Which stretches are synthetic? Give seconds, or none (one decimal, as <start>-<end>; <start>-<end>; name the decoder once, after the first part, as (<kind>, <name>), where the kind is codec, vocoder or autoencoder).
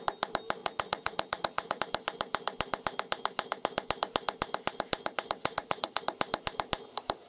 0.6-1.8 (vocoder, Vocos); 5.4-6.0